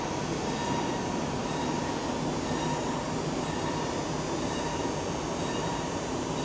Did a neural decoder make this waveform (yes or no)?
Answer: no